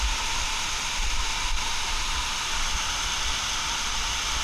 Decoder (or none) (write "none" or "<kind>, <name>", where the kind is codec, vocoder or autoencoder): none